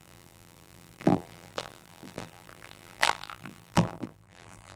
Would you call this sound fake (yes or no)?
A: yes